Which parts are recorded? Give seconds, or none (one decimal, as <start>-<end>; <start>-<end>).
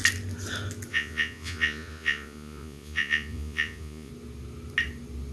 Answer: 0.0-0.9; 4.1-5.3